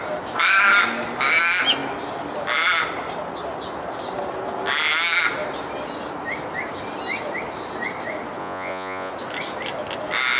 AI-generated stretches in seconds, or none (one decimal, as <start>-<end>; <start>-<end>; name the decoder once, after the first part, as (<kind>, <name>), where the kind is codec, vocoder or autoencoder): 8.4-9.1 (vocoder, Vocos)